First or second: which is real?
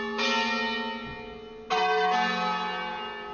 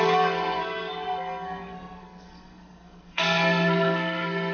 first